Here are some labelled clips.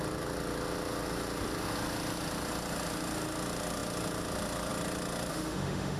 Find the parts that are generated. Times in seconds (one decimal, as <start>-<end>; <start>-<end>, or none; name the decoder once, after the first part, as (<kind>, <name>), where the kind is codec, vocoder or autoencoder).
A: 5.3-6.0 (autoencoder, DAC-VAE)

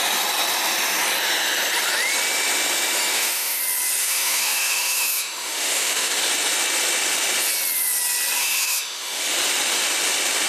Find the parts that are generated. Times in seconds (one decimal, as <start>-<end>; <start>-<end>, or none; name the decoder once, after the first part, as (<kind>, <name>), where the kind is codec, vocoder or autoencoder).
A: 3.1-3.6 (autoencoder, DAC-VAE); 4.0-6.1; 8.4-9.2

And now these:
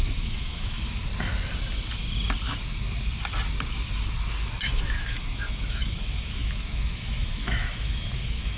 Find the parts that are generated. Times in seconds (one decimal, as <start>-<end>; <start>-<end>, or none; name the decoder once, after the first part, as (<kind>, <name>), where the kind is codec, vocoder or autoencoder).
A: 0.0-1.1 (autoencoder, DAC-VAE); 4.6-8.6

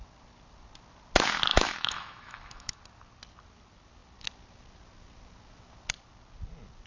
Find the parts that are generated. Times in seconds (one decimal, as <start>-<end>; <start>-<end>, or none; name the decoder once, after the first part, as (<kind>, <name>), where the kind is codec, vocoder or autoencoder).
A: 1.5-2.8 (autoencoder, DAC-VAE)